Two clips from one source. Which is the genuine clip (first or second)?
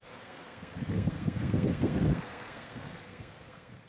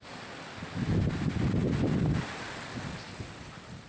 second